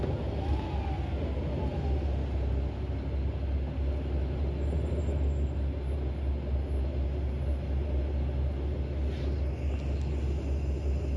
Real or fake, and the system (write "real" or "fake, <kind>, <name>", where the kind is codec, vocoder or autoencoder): real